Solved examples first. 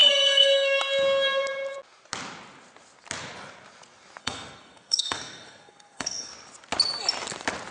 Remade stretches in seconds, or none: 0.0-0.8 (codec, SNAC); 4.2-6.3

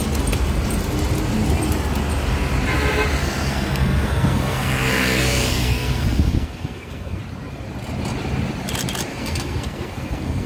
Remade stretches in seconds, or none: 3.2-7.2 (codec, SNAC); 9.1-10.5

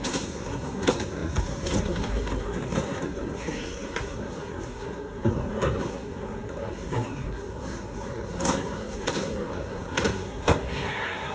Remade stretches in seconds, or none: 0.0-11.3 (codec, SNAC)